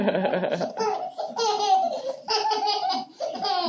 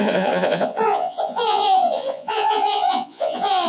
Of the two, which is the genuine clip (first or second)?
first